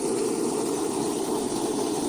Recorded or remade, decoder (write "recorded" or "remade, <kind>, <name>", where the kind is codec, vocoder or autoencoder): recorded